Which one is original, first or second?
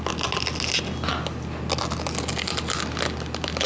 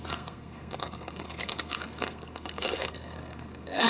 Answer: first